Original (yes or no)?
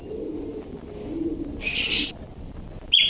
yes